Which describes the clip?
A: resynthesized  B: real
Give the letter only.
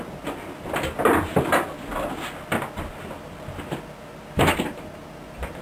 B